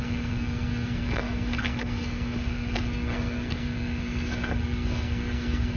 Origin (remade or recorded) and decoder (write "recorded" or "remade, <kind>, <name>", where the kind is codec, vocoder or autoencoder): remade, codec, SNAC